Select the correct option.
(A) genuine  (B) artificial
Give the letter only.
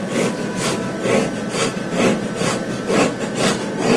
A